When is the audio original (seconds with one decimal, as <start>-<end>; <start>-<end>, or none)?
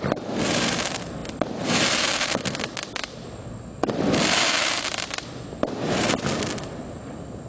0.0-7.5